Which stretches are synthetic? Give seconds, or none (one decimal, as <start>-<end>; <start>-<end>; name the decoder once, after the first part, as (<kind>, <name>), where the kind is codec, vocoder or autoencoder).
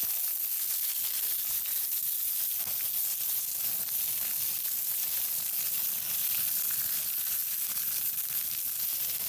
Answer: 5.8-7.0 (vocoder, BigVGAN v2)